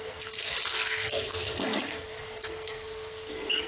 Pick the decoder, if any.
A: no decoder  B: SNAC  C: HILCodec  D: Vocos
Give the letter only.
B